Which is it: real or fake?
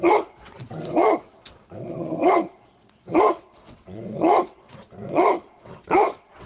fake